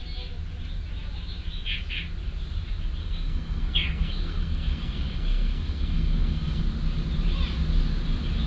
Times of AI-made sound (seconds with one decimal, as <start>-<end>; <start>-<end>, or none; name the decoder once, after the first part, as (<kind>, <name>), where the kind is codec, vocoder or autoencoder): 3.0-6.6 (codec, SNAC)

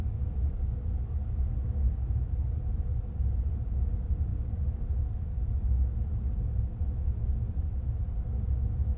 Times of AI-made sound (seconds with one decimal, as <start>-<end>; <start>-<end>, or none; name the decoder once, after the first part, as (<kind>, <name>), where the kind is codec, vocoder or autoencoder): none